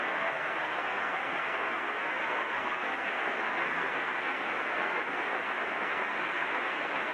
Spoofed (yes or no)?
yes